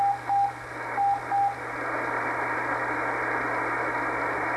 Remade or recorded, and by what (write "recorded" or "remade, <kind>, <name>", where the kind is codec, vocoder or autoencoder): recorded